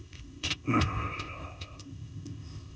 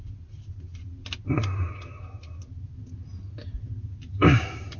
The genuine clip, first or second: second